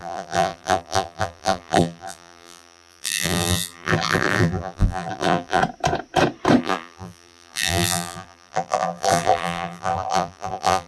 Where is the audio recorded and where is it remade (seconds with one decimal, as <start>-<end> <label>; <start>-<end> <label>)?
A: 0.0-5.6 remade; 5.6-6.6 recorded; 6.6-10.9 remade